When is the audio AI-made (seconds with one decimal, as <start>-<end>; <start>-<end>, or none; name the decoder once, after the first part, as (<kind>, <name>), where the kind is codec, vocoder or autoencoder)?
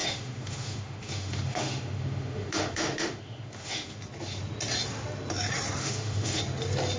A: 0.0-4.0 (autoencoder, DAC-VAE); 5.8-6.4